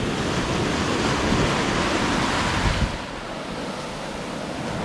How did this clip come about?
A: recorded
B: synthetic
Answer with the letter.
A